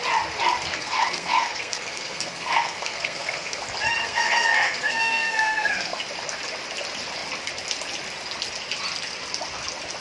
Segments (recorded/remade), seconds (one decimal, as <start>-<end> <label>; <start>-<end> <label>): 0.0-0.7 recorded; 0.7-3.6 remade; 3.6-4.0 recorded; 4.0-6.0 remade; 6.0-10.0 recorded